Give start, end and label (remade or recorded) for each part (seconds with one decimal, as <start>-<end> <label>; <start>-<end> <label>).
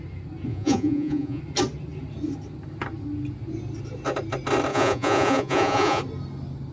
0.0-0.5 recorded; 0.5-1.4 remade; 1.4-4.7 recorded; 4.7-6.0 remade; 6.0-6.7 recorded